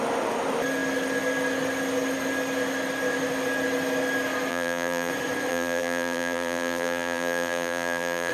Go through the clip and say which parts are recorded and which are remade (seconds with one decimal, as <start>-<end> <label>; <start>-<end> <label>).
0.0-4.5 recorded; 4.5-5.1 remade; 5.1-5.5 recorded; 5.5-8.3 remade